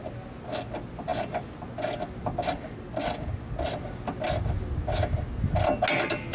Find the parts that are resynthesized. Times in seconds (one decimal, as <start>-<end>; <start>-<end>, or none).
none